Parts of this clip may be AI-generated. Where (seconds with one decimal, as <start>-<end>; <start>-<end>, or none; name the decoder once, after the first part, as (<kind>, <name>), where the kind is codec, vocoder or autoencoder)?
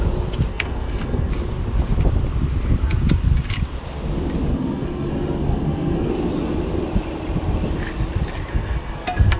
0.5-1.3 (codec, SNAC); 4.5-6.1; 8.5-9.4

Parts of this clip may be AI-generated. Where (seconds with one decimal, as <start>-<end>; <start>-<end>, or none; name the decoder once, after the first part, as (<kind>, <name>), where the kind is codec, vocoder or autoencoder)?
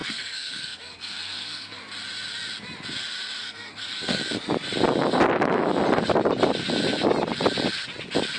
0.0-1.8 (codec, SNAC); 3.4-4.2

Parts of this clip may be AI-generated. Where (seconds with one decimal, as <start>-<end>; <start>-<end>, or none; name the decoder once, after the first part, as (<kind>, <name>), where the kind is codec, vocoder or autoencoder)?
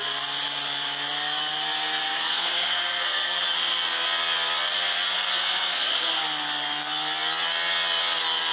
2.0-3.4 (codec, SNAC); 5.3-6.2